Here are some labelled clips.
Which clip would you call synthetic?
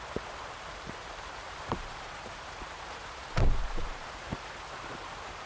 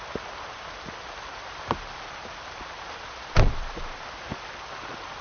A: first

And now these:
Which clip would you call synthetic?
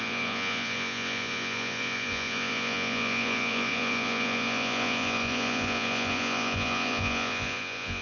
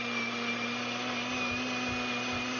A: first